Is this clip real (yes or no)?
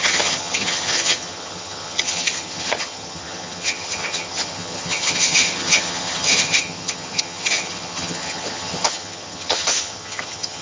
no